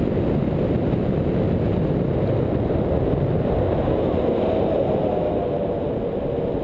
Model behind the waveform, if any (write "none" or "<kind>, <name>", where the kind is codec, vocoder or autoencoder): none